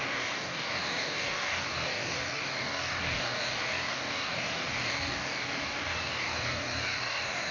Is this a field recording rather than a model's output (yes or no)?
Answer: no